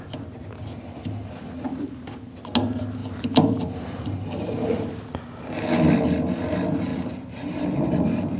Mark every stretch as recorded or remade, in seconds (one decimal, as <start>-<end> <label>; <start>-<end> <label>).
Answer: 0.0-3.0 recorded; 3.0-5.0 remade; 5.0-6.9 recorded; 6.9-7.8 remade; 7.8-8.4 recorded